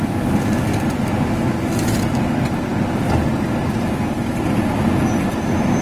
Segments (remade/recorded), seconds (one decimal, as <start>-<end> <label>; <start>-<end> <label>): 0.0-5.8 recorded